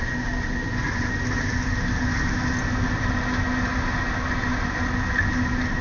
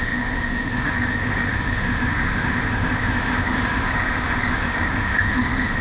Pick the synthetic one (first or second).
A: second